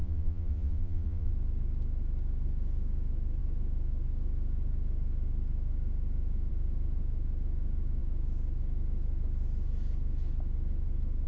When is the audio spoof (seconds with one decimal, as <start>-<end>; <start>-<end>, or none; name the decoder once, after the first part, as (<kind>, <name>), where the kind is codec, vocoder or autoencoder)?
0.0-1.3 (vocoder, Vocos)